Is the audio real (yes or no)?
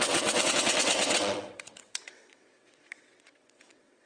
no